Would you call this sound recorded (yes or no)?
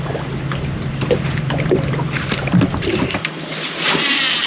yes